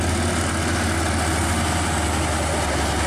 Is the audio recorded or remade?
recorded